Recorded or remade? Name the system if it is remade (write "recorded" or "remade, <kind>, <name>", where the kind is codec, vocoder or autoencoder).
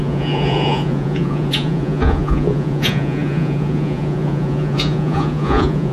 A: remade, vocoder, Vocos